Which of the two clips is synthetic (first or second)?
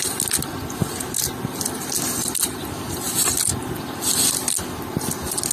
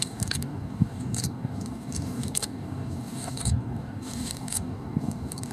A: second